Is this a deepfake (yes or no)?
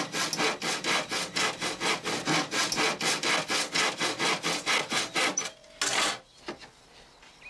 no